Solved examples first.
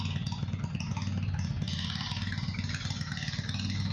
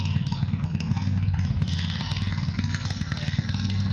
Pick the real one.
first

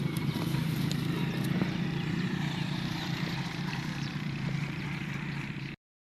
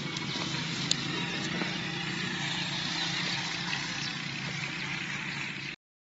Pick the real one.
second